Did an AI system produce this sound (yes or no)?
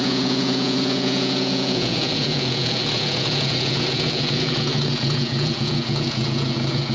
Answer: yes